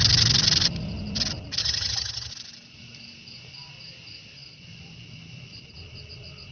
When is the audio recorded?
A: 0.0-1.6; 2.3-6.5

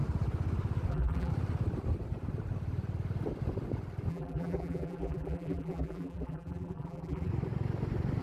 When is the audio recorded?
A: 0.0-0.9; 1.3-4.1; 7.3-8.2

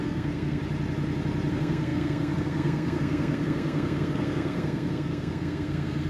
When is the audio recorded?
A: 0.6-1.5

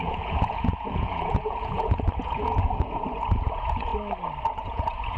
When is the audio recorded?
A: 3.9-4.5